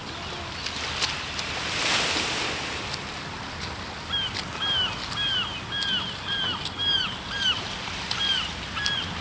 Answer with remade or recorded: recorded